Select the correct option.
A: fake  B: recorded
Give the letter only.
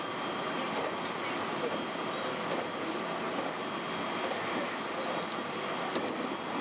B